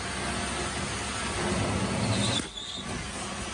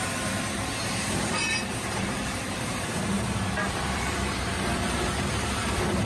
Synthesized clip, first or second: second